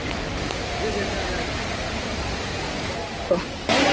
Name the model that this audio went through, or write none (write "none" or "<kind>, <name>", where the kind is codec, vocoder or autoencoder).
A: none